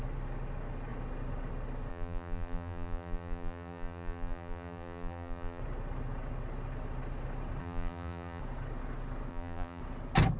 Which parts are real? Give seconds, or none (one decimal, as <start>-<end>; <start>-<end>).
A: 0.0-1.9; 5.6-7.6; 8.4-9.3; 9.8-10.4